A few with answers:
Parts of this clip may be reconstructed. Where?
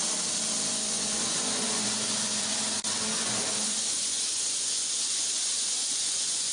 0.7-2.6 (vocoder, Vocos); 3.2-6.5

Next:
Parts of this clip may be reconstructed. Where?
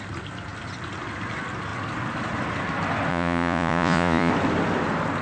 3.1-4.3 (vocoder, Vocos)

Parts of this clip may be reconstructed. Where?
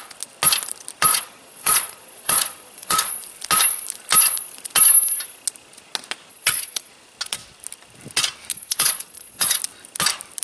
1.1-3.1 (vocoder, Vocos); 6.3-6.9; 8.5-9.6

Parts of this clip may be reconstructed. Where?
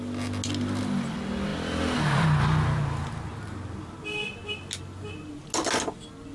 none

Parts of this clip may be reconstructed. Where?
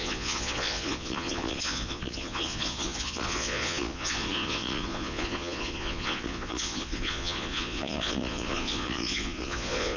0.0-10.0 (vocoder, Vocos)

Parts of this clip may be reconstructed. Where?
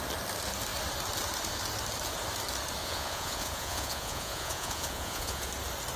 2.8-5.5 (vocoder, Vocos)